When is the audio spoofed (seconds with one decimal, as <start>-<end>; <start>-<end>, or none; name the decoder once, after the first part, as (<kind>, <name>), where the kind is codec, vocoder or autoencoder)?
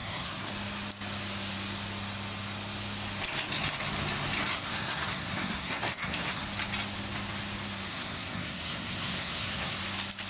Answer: 0.0-0.5 (codec, SNAC); 4.5-6.4; 7.9-9.8